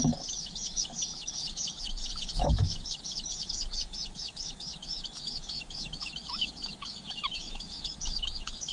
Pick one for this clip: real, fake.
fake